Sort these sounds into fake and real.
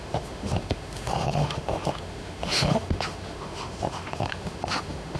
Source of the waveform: fake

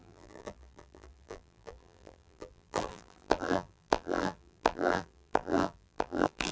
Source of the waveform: fake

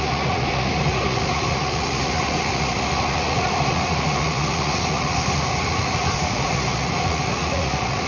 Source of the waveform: fake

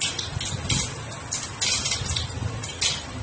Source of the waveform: real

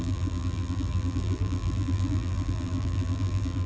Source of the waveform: fake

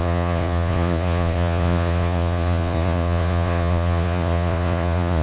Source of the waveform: fake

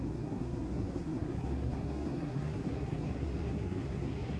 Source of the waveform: fake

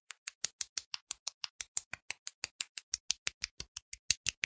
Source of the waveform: real